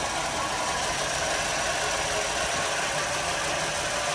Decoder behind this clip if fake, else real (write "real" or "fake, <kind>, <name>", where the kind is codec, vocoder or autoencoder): real